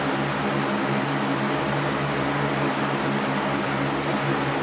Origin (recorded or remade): recorded